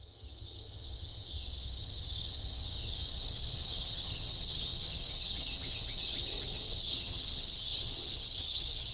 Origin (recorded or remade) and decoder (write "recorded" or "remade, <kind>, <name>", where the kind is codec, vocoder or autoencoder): remade, vocoder, HiFi-GAN